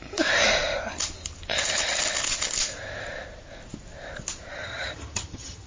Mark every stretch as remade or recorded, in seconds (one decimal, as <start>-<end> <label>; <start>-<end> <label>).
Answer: 0.0-4.6 recorded; 4.6-5.7 remade